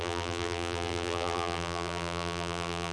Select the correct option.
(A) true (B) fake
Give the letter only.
B